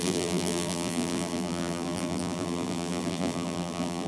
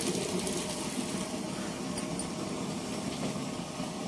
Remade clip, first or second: first